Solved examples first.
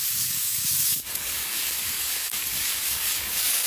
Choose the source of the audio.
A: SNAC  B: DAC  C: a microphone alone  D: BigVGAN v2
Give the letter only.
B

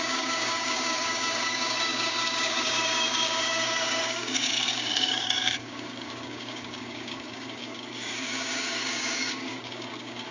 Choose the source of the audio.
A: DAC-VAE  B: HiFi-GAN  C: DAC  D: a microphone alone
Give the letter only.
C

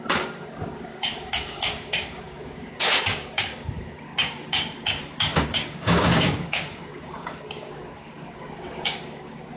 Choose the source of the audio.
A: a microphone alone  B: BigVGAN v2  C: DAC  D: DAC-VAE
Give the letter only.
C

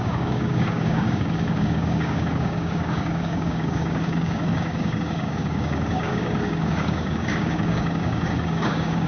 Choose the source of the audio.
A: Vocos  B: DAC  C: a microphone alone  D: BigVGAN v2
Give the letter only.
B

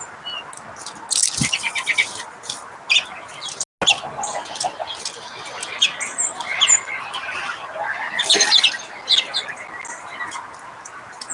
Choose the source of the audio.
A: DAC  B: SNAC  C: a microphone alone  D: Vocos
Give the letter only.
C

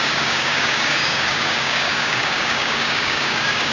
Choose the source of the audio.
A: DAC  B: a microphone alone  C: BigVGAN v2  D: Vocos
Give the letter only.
A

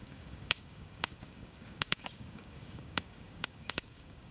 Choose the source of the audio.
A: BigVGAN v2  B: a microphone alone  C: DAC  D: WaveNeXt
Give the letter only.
C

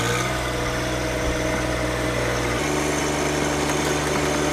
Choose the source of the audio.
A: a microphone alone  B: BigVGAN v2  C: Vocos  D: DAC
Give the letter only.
A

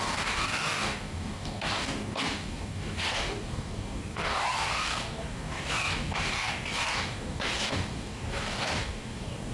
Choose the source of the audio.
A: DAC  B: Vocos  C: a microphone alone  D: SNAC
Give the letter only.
A